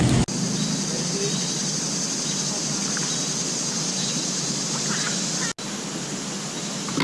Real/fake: real